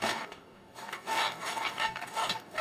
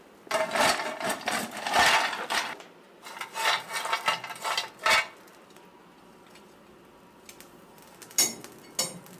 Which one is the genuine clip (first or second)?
second